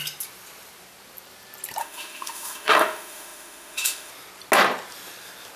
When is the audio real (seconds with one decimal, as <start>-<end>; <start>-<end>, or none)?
0.0-1.8; 4.1-5.6